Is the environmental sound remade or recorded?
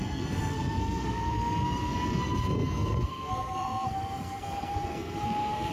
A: remade